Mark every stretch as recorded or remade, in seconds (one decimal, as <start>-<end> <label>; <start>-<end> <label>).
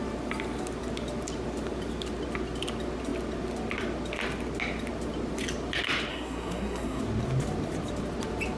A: 0.0-6.1 recorded; 6.1-7.0 remade; 7.0-8.6 recorded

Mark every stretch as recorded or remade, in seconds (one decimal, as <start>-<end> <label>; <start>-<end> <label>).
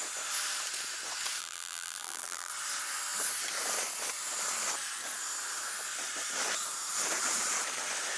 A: 0.0-1.4 recorded; 1.4-2.5 remade; 2.5-8.2 recorded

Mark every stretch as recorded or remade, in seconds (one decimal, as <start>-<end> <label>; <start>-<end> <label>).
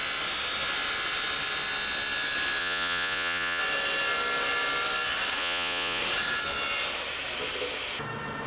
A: 0.0-2.6 recorded; 2.6-3.6 remade; 3.6-5.4 recorded; 5.4-6.0 remade; 6.0-8.5 recorded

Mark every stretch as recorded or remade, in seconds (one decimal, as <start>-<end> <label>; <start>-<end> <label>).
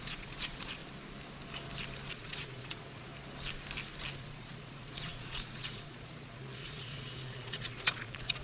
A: 0.0-0.8 remade; 0.8-2.1 recorded; 2.1-3.1 remade; 3.1-4.2 recorded; 4.2-8.4 remade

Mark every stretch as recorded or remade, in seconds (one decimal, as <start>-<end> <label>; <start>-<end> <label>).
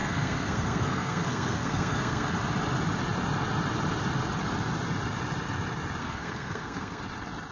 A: 0.0-2.3 remade; 2.3-6.0 recorded; 6.0-7.0 remade; 7.0-7.5 recorded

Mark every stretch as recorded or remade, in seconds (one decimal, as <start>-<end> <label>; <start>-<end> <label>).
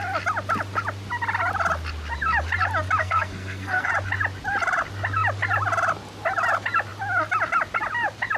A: 0.0-3.0 recorded; 3.0-3.9 remade; 3.9-8.4 recorded